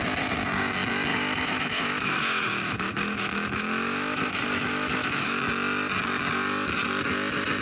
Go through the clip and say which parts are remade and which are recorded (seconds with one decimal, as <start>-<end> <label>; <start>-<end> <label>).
0.0-1.1 recorded; 1.1-5.4 remade; 5.4-7.6 recorded